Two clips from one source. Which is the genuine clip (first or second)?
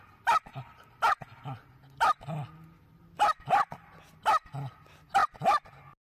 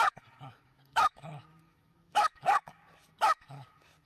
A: first